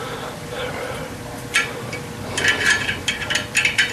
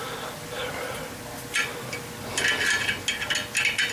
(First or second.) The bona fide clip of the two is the second